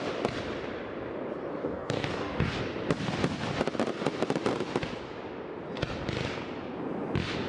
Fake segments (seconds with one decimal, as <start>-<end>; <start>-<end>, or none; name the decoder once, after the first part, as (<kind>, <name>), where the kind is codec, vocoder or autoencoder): 1.6-2.6 (codec, DAC)